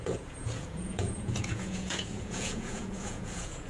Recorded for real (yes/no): no